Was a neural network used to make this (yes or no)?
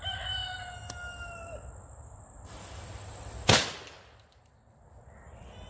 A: no